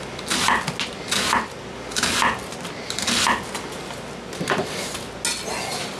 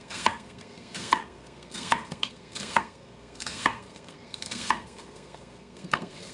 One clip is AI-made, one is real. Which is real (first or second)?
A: first